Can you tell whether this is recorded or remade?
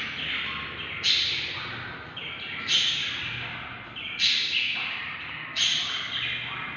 recorded